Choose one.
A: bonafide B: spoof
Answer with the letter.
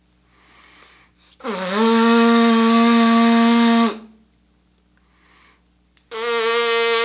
A